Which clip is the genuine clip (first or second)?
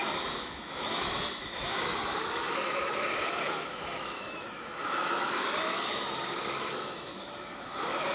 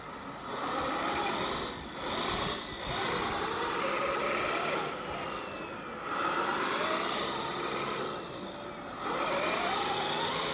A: second